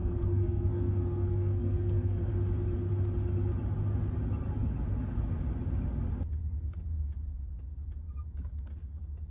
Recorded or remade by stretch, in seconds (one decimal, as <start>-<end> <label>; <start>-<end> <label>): 0.0-2.3 remade; 2.3-9.3 recorded